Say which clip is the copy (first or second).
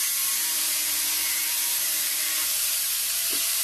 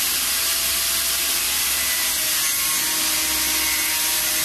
first